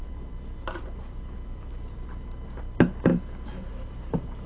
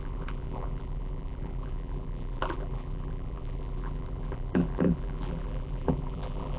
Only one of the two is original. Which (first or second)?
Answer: first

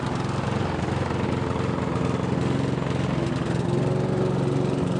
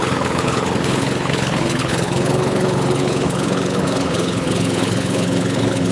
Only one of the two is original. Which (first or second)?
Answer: first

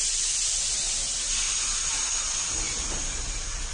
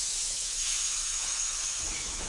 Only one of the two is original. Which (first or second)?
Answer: first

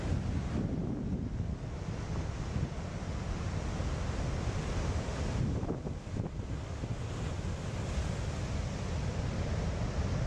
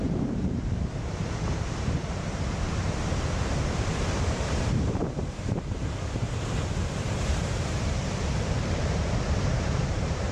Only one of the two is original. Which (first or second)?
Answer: first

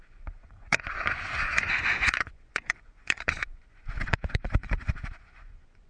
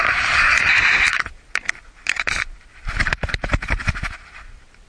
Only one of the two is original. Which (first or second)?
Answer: second